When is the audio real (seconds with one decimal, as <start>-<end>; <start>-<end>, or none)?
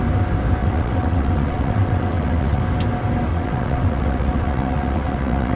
0.0-0.6; 2.6-3.3